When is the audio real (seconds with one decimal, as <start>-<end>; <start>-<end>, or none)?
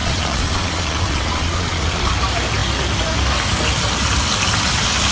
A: 2.1-5.1